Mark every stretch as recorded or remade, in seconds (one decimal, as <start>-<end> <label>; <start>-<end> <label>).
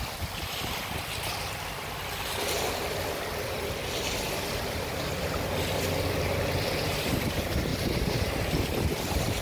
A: 0.0-9.4 recorded